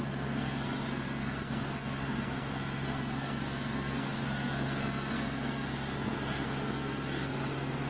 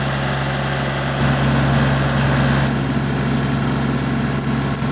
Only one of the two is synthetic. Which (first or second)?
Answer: first